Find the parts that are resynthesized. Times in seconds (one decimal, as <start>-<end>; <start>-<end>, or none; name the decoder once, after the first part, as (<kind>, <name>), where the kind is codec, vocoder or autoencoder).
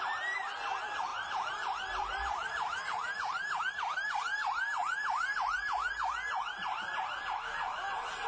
1.1-3.6 (vocoder, BigVGAN v2); 4.8-5.9